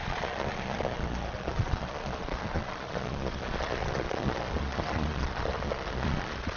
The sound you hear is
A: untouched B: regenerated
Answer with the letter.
B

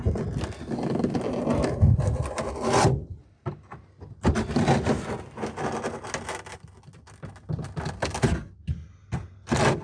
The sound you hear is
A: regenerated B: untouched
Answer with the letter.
B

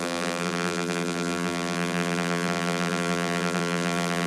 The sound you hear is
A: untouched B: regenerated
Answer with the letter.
B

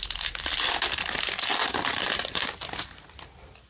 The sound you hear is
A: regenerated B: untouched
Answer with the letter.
B